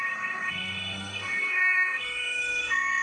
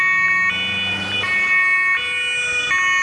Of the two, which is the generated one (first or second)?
first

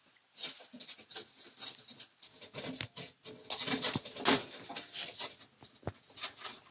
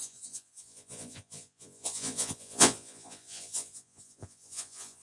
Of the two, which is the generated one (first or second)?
second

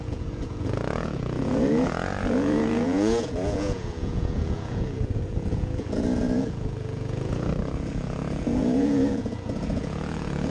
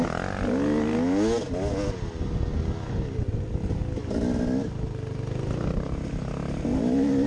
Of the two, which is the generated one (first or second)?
first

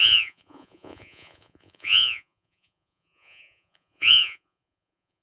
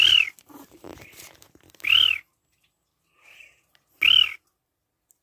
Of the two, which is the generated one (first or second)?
first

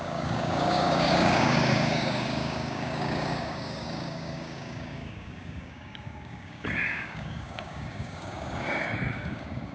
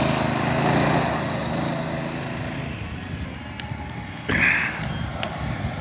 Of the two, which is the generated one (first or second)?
first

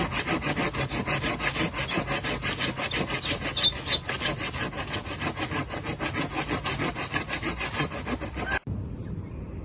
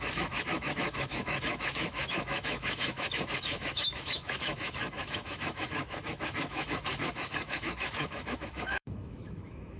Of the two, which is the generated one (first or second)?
second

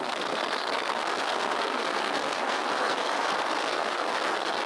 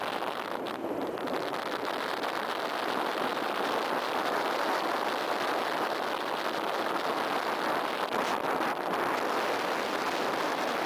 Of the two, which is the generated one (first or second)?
first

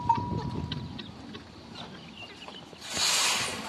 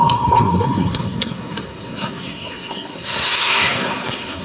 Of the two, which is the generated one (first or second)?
second